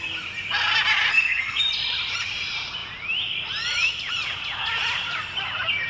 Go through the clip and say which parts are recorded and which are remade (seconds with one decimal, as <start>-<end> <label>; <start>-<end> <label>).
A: 0.0-1.1 recorded; 1.1-1.6 remade; 1.6-5.9 recorded